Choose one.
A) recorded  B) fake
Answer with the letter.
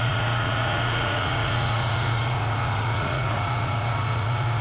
B